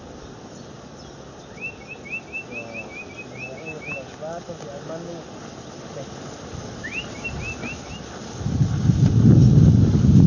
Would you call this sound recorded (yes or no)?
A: yes